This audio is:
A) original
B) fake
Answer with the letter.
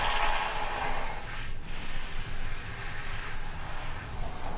A